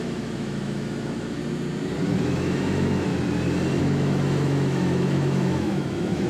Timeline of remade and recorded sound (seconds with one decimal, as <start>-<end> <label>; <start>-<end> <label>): 0.0-1.4 remade; 1.4-2.2 recorded; 2.2-3.1 remade; 3.1-3.8 recorded; 3.8-6.3 remade